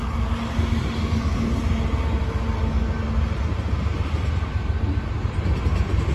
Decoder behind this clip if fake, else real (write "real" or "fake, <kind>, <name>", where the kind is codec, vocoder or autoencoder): real